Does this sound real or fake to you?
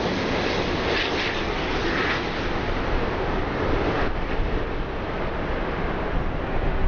real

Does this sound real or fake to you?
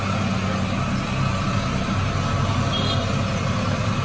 real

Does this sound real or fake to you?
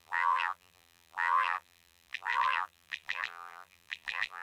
fake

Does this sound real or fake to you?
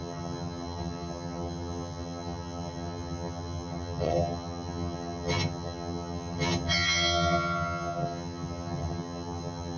fake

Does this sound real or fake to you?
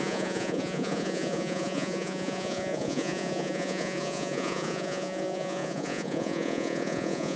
fake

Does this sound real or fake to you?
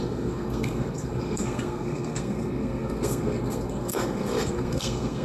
fake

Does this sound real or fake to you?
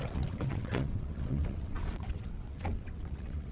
fake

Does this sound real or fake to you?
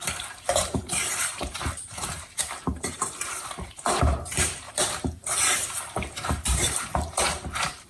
fake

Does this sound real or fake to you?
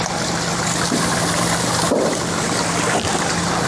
real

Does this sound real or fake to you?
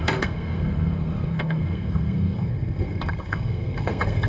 fake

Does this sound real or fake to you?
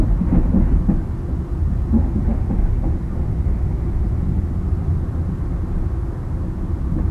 real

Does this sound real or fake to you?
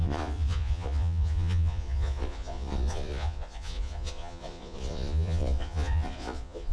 fake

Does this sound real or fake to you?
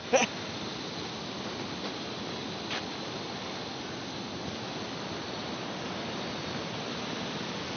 real